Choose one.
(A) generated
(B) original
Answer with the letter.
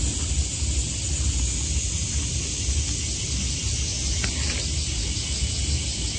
B